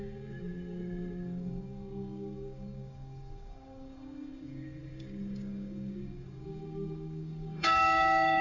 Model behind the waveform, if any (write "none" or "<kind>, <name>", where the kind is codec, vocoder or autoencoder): codec, DAC